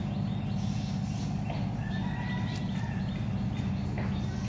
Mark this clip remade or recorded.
recorded